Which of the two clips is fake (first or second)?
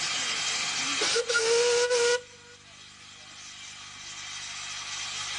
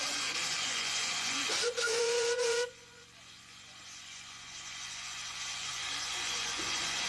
second